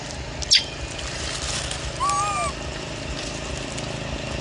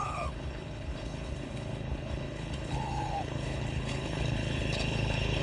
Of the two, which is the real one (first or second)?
first